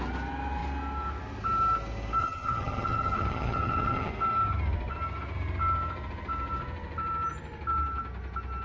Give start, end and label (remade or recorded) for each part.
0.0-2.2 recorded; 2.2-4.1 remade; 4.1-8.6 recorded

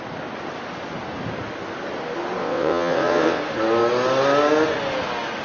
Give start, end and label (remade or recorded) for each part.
0.0-2.4 recorded; 2.4-3.4 remade; 3.4-5.4 recorded

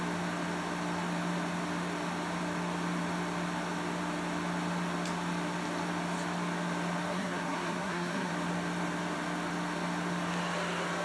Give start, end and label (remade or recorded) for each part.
0.0-7.1 recorded; 7.1-8.3 remade; 8.3-11.0 recorded

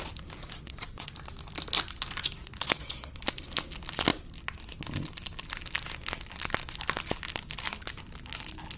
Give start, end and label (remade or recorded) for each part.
0.0-0.4 recorded; 0.4-1.1 remade; 1.1-2.4 recorded; 2.4-3.1 remade; 3.1-8.8 recorded

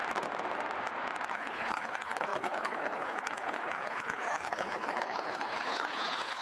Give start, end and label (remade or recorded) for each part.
0.0-1.3 recorded; 1.3-6.4 remade